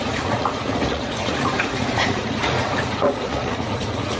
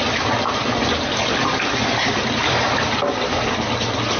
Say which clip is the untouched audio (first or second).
second